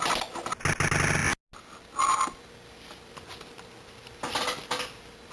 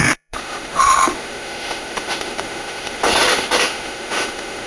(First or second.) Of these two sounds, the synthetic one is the second